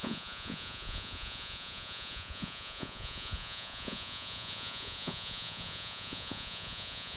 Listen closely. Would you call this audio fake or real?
fake